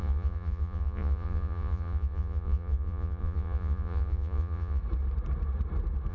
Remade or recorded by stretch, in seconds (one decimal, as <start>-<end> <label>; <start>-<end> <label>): 0.0-4.8 remade; 4.8-6.1 recorded